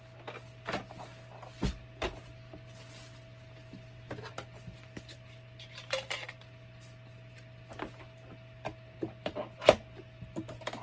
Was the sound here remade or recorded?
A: recorded